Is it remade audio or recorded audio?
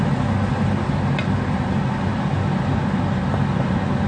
recorded